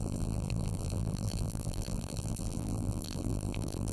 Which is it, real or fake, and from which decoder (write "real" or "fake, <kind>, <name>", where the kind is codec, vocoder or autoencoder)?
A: fake, vocoder, BigVGAN v2